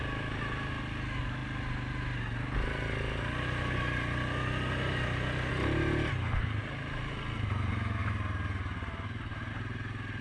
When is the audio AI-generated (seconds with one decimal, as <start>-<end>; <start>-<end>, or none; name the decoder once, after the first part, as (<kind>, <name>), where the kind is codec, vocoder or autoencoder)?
none